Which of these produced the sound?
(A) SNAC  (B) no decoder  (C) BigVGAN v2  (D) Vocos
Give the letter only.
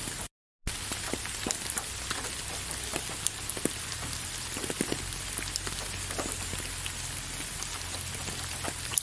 B